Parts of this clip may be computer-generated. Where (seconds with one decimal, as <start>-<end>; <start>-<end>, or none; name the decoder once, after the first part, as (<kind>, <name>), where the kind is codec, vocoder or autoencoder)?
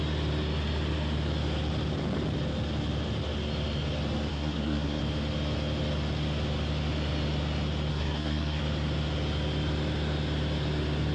4.3-5.0 (codec, SNAC); 7.9-8.6